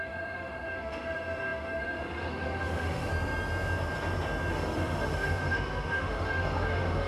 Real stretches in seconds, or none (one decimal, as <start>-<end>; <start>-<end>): 3.1-4.5